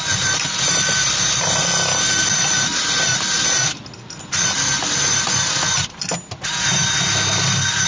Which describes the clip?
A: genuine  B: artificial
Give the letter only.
A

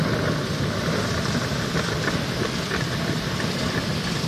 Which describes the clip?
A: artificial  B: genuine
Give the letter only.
B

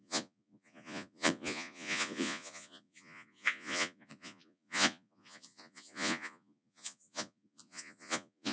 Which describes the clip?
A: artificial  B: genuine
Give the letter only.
A